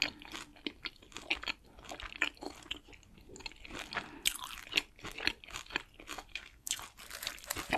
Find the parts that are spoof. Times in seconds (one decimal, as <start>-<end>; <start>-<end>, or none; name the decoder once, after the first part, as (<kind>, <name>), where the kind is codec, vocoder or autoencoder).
6.3-6.8 (codec, SNAC)

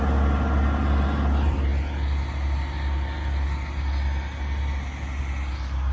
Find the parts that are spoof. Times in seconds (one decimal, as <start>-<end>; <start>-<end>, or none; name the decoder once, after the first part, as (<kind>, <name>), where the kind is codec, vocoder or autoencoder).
none

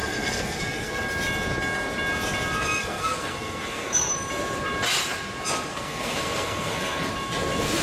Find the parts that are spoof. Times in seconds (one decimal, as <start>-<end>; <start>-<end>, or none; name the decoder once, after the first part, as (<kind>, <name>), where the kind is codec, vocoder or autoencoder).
0.0-1.0 (codec, SNAC); 2.8-4.1; 5.7-7.1

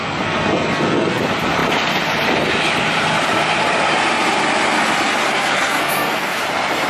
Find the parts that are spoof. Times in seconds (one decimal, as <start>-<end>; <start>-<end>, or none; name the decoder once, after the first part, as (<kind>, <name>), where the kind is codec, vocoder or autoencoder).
0.0-1.2 (codec, SNAC); 5.3-6.4

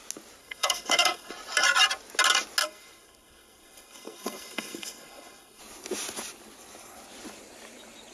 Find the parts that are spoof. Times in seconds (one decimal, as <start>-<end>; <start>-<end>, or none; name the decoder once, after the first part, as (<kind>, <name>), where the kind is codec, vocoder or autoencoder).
0.4-1.3 (codec, SNAC); 2.6-5.6